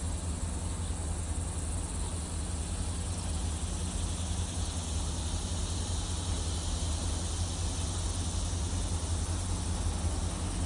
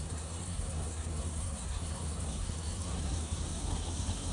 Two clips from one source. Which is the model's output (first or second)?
second